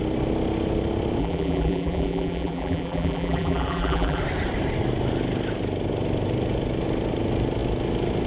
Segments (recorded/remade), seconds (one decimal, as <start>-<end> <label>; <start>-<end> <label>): 0.0-1.2 recorded; 1.2-4.2 remade; 4.2-8.3 recorded